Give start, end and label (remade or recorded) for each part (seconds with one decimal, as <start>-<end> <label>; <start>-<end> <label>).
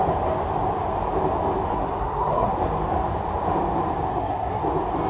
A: 0.0-1.7 recorded; 1.7-2.5 remade; 2.5-4.1 recorded; 4.1-4.6 remade; 4.6-5.1 recorded